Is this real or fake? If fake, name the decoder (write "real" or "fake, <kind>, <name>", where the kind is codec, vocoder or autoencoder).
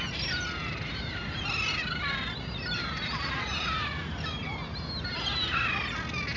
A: real